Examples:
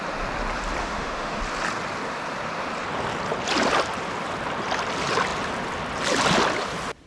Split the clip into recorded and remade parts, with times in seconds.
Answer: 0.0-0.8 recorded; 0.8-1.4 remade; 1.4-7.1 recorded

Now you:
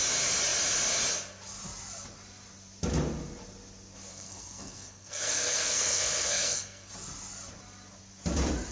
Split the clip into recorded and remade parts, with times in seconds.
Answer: 0.0-4.1 recorded; 4.1-6.9 remade; 6.9-8.7 recorded